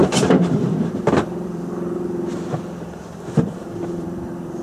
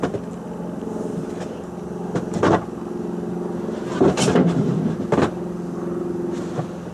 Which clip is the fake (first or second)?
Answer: first